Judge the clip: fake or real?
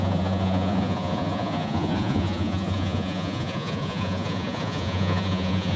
fake